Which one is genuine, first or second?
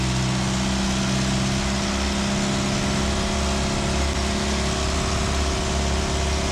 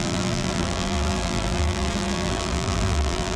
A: first